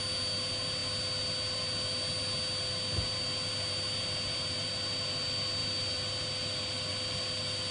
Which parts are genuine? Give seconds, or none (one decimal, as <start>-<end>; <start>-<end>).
0.0-7.7